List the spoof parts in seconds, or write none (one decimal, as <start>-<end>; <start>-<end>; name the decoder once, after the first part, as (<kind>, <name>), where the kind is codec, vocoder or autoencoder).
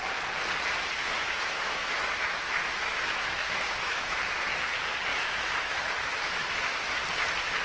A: 1.0-4.2 (autoencoder, DAC-VAE); 5.1-7.0